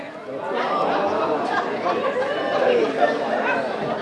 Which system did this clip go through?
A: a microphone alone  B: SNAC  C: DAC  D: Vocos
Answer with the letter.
A